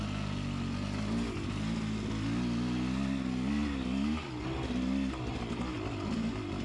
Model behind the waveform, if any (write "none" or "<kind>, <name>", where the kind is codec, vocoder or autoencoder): none